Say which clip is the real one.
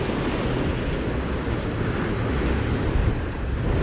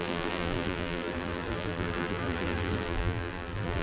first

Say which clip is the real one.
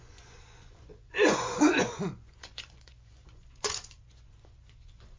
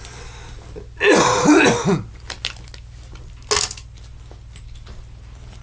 second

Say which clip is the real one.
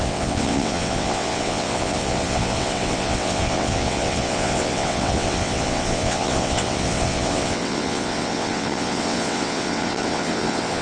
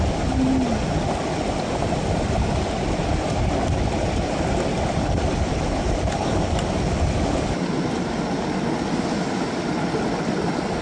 second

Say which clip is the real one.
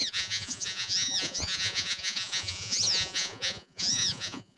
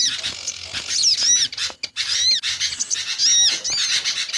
second